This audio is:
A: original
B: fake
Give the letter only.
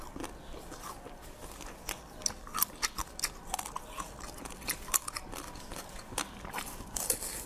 A